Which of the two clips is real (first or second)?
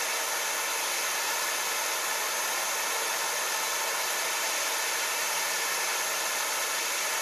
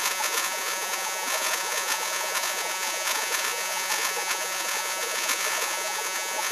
first